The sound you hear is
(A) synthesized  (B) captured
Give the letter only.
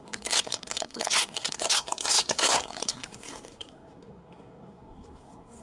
A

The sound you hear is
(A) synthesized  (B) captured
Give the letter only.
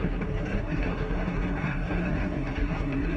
A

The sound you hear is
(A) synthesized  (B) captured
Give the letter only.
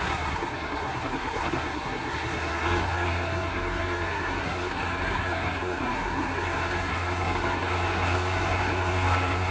A